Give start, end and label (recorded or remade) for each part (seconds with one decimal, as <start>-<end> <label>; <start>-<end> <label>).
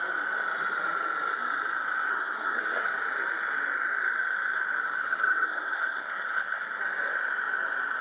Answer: 0.0-2.1 recorded; 2.1-2.9 remade; 2.9-5.0 recorded; 5.0-6.8 remade; 6.8-8.0 recorded